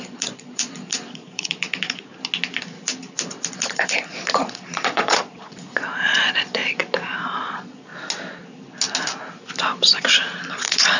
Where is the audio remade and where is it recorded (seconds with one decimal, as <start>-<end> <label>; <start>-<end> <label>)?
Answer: 0.0-2.1 remade; 2.1-3.5 recorded; 3.5-6.6 remade; 6.6-7.2 recorded; 7.2-7.9 remade; 7.9-10.5 recorded; 10.5-11.0 remade